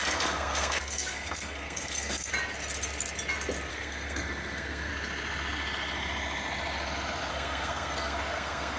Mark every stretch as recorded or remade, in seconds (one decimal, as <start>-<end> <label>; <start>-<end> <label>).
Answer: 0.0-2.3 remade; 2.3-3.7 recorded; 3.7-4.9 remade; 4.9-7.3 recorded; 7.3-8.8 remade